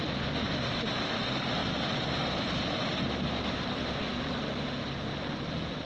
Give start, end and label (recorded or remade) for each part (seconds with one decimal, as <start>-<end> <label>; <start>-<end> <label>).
0.0-5.8 recorded